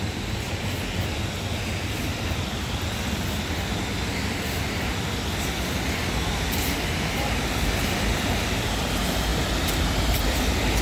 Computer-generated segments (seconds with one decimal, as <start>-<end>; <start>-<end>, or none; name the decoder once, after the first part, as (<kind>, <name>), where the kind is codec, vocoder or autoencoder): none